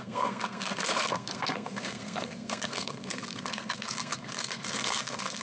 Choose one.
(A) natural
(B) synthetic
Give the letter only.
B